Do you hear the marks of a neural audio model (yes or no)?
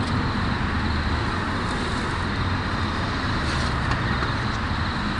no